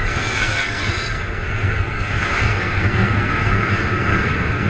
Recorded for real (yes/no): no